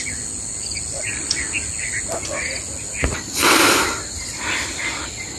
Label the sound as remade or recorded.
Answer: recorded